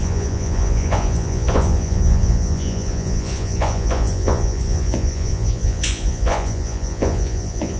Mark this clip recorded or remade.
remade